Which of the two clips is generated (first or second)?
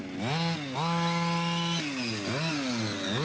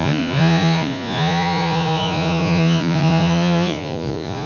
second